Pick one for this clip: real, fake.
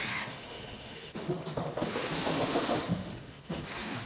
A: fake